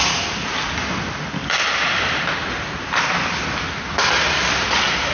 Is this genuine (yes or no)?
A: yes